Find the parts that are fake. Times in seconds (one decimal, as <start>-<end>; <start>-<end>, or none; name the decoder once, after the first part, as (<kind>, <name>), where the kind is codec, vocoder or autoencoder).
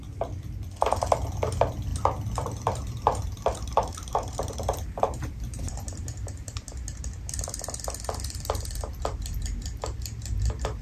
1.9-7.0 (vocoder, BigVGAN v2)